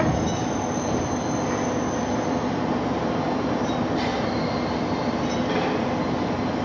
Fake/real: real